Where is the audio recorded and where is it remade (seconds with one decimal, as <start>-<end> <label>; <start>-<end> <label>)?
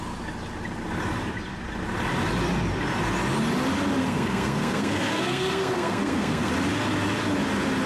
0.0-4.0 recorded; 4.0-6.5 remade; 6.5-7.9 recorded